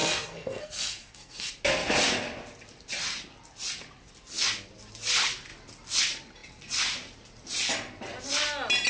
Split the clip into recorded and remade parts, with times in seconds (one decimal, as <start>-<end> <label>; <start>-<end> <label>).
0.0-1.5 remade; 1.5-8.9 recorded